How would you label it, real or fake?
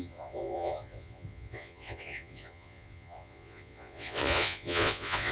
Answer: fake